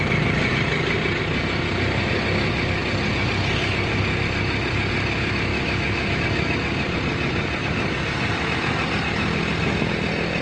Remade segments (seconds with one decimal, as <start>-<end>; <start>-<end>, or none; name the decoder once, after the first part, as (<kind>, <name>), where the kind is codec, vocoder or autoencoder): 5.5-6.2 (autoencoder, DAC-VAE)